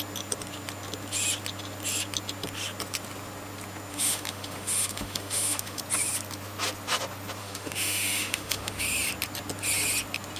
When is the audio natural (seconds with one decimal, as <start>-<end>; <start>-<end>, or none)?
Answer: 0.0-3.9; 5.8-7.4; 8.8-10.4